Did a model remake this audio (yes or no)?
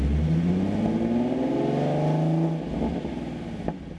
no